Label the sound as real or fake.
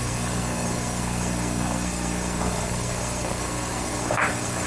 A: fake